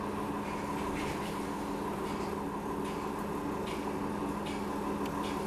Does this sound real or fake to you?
real